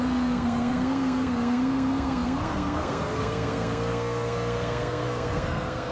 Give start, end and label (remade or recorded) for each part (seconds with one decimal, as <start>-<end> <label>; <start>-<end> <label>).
0.0-5.9 remade